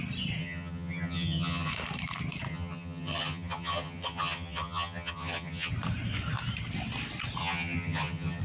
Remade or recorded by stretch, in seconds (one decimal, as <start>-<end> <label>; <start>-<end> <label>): 0.0-0.4 recorded; 0.4-1.7 remade; 1.7-2.5 recorded; 2.5-5.7 remade; 5.7-7.4 recorded; 7.4-8.4 remade